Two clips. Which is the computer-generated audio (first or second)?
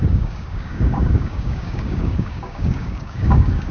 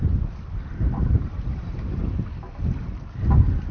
first